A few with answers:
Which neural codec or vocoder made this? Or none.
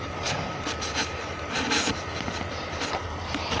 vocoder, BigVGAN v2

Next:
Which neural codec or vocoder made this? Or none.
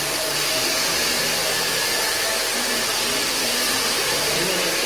none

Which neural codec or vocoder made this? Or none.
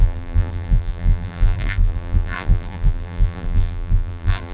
vocoder, BigVGAN v2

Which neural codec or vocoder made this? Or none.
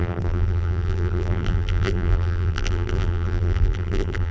vocoder, BigVGAN v2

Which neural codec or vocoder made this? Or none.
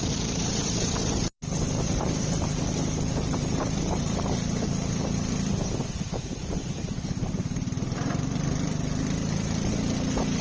vocoder, BigVGAN v2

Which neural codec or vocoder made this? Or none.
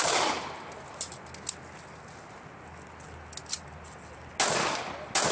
none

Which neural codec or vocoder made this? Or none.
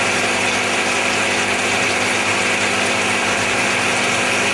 none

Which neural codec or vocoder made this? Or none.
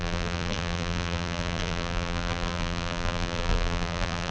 vocoder, BigVGAN v2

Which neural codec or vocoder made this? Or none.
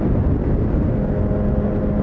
none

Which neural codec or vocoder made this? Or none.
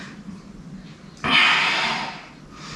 none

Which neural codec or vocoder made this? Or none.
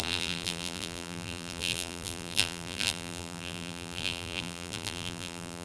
vocoder, BigVGAN v2